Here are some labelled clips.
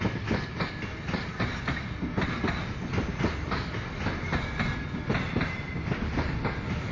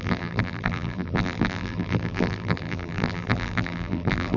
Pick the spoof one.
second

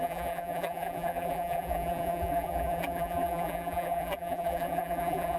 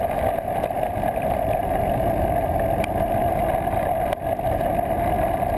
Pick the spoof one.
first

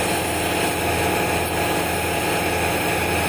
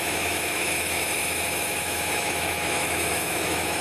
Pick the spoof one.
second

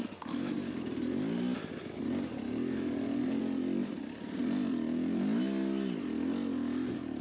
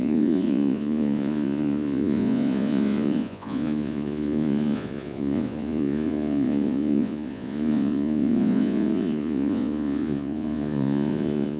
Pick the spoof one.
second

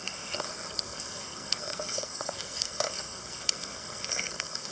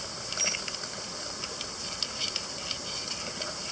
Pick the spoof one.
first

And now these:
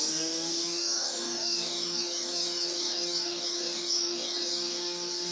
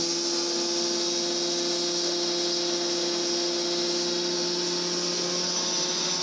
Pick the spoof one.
first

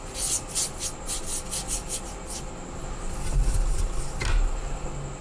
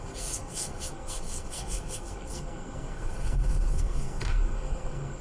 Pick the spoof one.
second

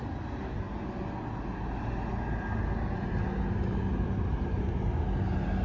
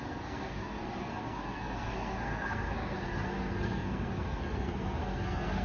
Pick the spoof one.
second